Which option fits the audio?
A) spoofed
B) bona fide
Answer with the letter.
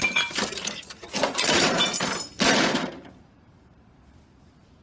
A